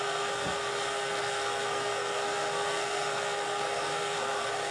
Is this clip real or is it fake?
fake